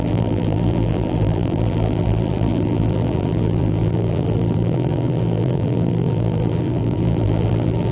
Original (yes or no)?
no